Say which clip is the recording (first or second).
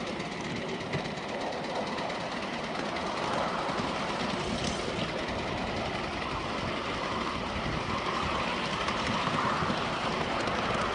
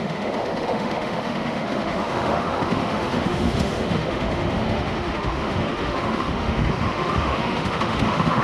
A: first